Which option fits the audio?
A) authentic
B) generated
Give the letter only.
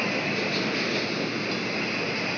A